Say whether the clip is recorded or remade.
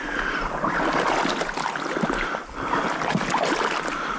recorded